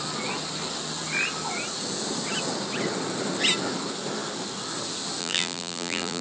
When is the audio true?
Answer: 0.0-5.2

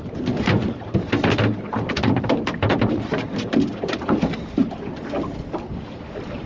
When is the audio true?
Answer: 4.6-5.7

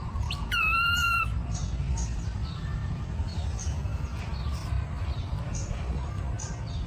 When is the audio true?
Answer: 0.0-0.4; 1.2-3.6; 4.2-6.9

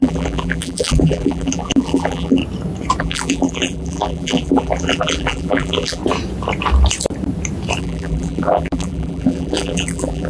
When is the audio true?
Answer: 2.4-3.0; 6.0-7.8

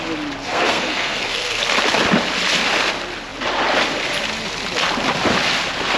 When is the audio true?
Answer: 0.0-0.4; 1.6-6.0

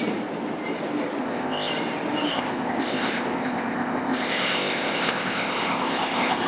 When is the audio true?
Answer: 0.0-1.2; 1.7-2.3

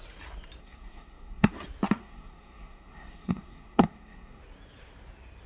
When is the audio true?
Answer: 0.0-0.6; 1.5-2.0; 4.4-5.5

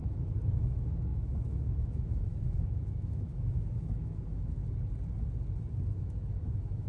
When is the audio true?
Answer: 4.6-5.9